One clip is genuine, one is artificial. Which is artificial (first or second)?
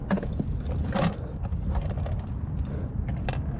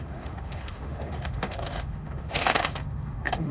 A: second